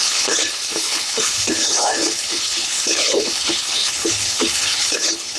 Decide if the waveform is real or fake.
fake